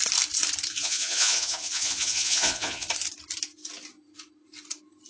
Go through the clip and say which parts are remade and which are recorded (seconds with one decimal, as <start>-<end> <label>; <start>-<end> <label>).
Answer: 0.0-0.7 recorded; 0.7-2.9 remade; 2.9-5.1 recorded